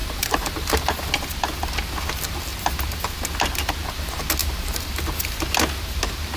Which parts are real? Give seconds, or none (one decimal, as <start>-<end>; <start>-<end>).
1.1-4.4; 5.4-6.4